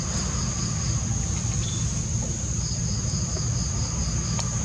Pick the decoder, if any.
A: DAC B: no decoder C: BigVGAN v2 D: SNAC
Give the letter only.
B